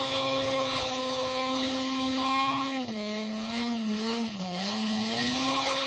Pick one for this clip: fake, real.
fake